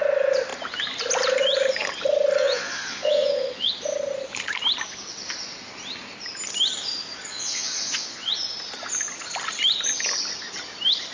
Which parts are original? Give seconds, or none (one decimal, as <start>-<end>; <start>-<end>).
0.0-2.4; 3.7-7.3; 8.3-11.1